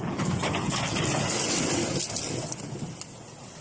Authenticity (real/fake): real